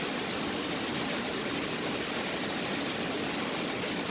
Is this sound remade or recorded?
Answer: recorded